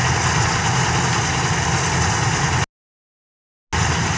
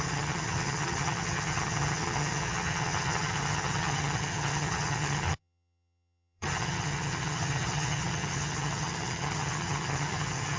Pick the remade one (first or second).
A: second